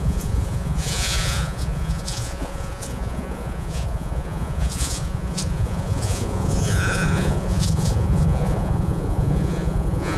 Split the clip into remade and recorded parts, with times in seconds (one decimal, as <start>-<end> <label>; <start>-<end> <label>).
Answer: 0.0-10.2 remade